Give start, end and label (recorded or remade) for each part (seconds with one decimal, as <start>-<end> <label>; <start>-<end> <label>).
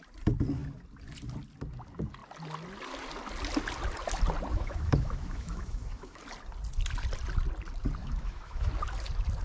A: 0.0-4.5 recorded; 4.5-6.2 remade; 6.2-8.0 recorded; 8.0-8.7 remade; 8.7-9.4 recorded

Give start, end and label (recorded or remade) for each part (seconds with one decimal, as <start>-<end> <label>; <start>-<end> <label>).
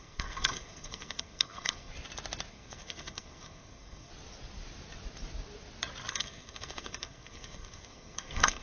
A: 0.0-1.9 remade; 1.9-2.5 recorded; 2.5-4.1 remade; 4.1-6.1 recorded; 6.1-8.6 remade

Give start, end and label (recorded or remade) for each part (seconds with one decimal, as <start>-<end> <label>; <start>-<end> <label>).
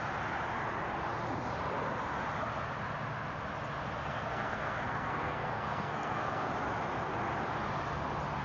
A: 0.0-4.0 recorded; 4.0-6.5 remade; 6.5-8.4 recorded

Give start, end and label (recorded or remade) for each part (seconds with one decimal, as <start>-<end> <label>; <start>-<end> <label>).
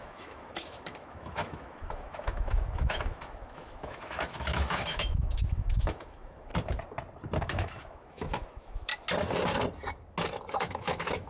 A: 0.0-6.5 remade; 6.5-7.4 recorded; 7.4-8.9 remade; 8.9-10.6 recorded; 10.6-11.3 remade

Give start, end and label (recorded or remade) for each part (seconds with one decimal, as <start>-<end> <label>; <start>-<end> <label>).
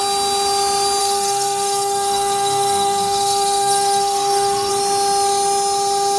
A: 0.0-1.0 recorded; 1.0-4.7 remade; 4.7-6.2 recorded